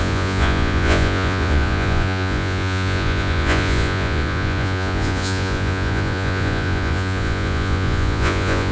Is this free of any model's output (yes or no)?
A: no